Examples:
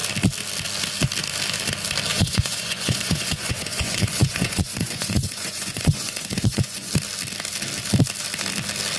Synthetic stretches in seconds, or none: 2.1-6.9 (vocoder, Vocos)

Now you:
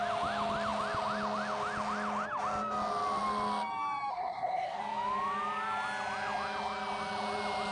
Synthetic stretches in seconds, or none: 4.1-4.8 (codec, SNAC)

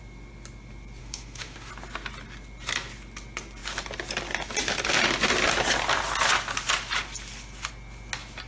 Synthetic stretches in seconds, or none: 1.0-1.7 (autoencoder, DAC-VAE)

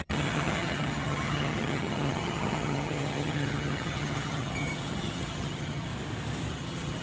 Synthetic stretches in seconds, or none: 0.0-5.9 (vocoder, HiFi-GAN); 6.5-7.0